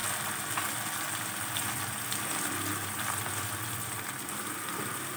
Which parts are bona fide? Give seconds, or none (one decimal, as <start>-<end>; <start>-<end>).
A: 0.0-5.2